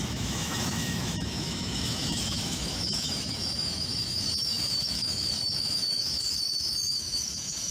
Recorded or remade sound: remade